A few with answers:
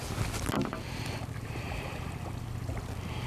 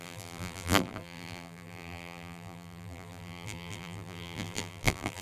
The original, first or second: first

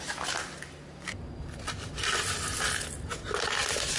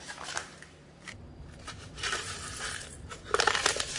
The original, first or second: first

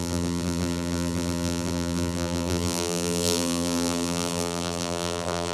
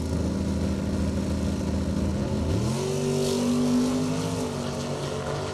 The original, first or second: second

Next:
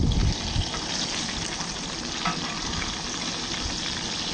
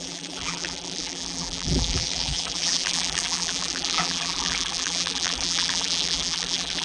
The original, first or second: first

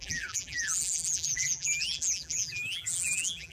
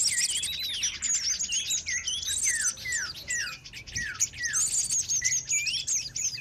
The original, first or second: second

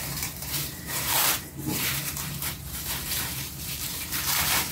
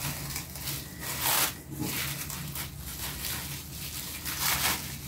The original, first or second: second